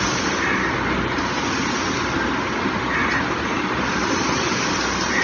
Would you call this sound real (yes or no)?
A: yes